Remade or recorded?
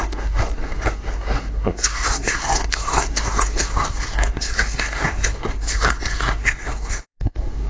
remade